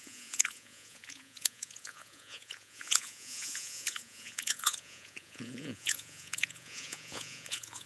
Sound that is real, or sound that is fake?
fake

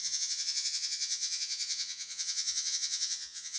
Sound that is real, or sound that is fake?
fake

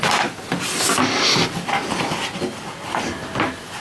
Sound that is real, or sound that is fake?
real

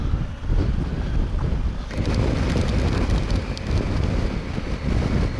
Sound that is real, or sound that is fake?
real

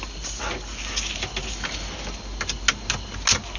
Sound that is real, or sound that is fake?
real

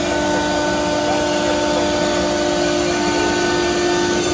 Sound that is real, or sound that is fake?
real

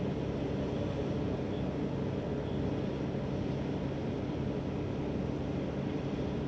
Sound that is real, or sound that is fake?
real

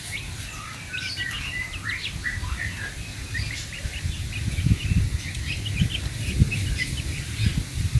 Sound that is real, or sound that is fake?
real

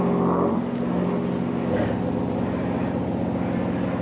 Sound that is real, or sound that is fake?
real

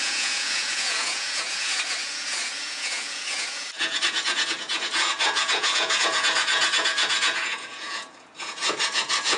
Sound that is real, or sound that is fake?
fake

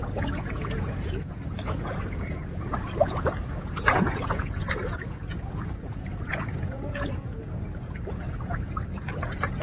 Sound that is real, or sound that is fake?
fake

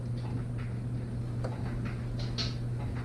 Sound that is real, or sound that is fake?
real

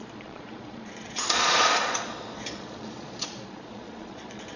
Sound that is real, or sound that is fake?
fake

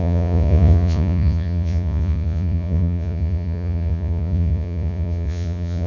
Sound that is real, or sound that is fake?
fake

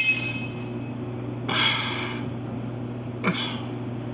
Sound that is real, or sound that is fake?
real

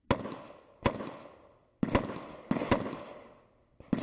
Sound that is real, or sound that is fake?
real